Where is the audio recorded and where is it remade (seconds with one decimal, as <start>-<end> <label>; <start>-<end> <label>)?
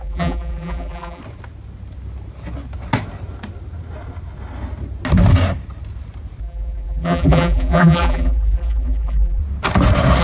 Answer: 0.0-1.2 remade; 1.2-6.4 recorded; 6.4-9.4 remade; 9.4-10.2 recorded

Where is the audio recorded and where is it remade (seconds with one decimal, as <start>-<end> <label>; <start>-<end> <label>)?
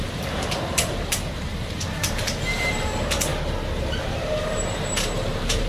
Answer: 0.0-3.3 remade; 3.3-4.0 recorded; 4.0-5.7 remade